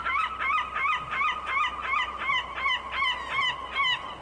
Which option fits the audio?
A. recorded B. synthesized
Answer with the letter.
A